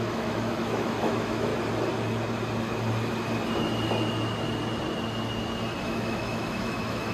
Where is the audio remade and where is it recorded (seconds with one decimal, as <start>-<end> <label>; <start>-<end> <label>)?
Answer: 0.0-1.5 remade; 1.5-5.8 recorded; 5.8-7.1 remade